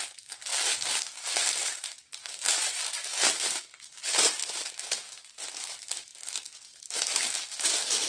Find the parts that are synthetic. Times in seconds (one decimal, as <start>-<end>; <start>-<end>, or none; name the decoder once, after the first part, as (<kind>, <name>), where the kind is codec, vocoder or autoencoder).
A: 0.0-8.1 (codec, DAC)